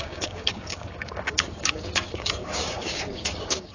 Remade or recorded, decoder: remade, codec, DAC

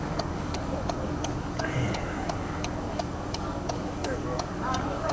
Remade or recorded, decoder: remade, codec, DAC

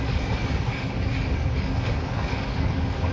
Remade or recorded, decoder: remade, codec, DAC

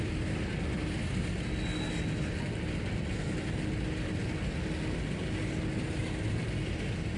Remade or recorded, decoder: recorded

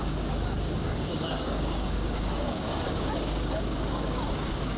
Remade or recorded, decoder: remade, codec, DAC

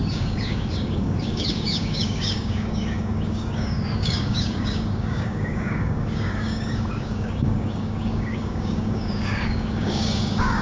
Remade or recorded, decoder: remade, codec, DAC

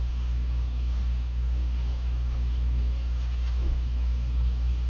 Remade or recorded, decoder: remade, codec, DAC